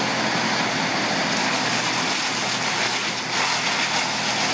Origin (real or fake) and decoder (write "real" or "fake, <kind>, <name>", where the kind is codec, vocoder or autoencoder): real